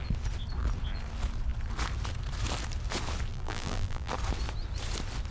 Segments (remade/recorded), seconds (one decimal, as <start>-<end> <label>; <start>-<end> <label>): 0.0-3.3 recorded; 3.3-4.1 remade; 4.1-5.3 recorded